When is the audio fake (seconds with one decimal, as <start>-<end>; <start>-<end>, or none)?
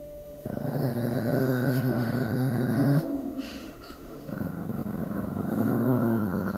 0.0-6.6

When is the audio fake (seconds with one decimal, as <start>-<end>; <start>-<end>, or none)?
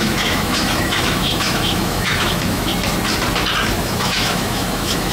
0.0-2.7; 3.8-5.1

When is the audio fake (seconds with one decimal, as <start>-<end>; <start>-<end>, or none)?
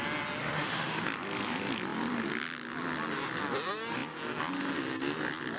0.4-1.0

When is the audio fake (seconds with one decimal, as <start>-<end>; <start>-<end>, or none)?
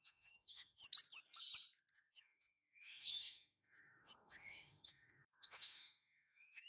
0.0-0.8; 1.9-6.7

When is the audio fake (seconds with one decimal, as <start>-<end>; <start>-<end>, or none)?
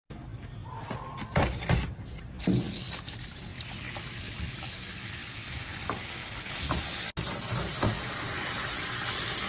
none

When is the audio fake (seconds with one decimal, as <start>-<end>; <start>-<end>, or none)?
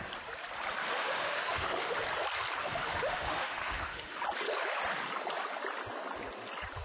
0.8-2.0; 2.6-4.2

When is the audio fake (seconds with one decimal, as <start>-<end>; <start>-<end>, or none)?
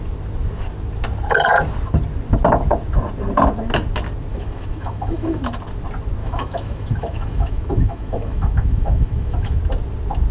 4.3-5.4; 6.2-9.6